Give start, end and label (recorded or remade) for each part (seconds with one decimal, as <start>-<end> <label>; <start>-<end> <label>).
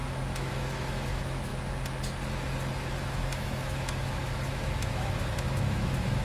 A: 0.0-1.5 remade; 1.5-3.0 recorded; 3.0-6.2 remade